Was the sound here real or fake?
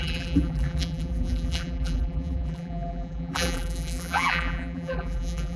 fake